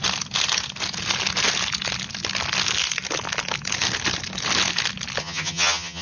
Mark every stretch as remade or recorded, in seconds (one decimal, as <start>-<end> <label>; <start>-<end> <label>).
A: 0.0-5.2 recorded; 5.2-6.0 remade